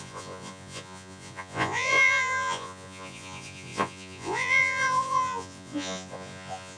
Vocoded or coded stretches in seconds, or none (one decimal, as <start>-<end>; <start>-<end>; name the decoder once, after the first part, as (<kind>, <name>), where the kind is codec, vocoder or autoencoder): 0.0-6.8 (vocoder, Vocos)